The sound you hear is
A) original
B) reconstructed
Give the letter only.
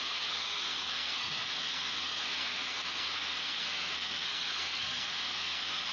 B